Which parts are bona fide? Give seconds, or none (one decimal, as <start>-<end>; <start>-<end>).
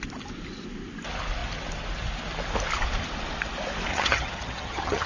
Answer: 0.0-3.9